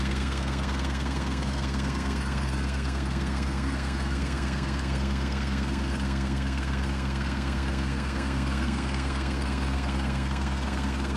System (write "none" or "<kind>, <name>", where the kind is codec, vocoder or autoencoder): codec, SNAC